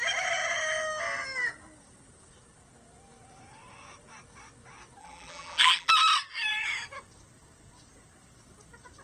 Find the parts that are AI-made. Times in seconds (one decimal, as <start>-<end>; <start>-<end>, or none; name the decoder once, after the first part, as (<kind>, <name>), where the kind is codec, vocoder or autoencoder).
5.0-5.9 (vocoder, BigVGAN v2)